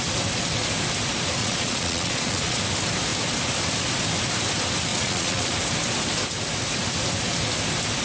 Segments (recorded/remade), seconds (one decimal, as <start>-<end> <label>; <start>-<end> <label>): 0.0-1.4 recorded; 1.4-2.6 remade; 2.6-4.9 recorded; 4.9-5.5 remade; 5.5-8.0 recorded